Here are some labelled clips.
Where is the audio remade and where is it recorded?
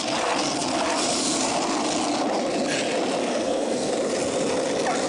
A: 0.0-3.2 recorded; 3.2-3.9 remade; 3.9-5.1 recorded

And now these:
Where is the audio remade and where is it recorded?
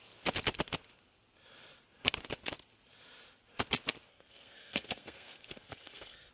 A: 0.0-4.1 recorded; 4.1-6.3 remade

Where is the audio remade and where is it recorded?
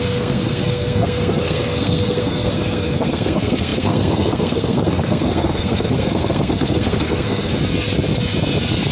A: 0.0-7.5 remade; 7.5-8.9 recorded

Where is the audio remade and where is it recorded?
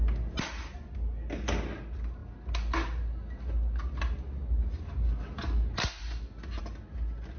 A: 0.0-7.4 recorded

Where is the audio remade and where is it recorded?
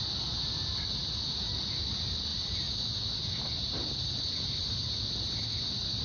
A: 0.0-6.0 recorded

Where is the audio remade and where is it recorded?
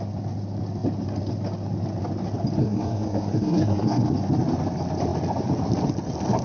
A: 0.0-2.6 recorded; 2.6-4.1 remade; 4.1-6.4 recorded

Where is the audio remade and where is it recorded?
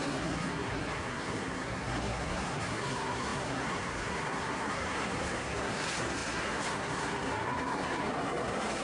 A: 0.0-8.8 remade